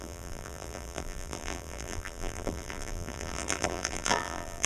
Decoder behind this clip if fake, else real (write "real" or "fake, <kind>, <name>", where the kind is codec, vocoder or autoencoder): fake, vocoder, BigVGAN v2